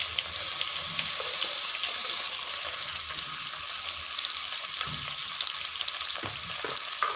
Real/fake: real